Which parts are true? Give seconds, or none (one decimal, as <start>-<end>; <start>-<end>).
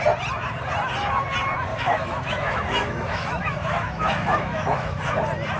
0.0-1.7; 5.1-5.6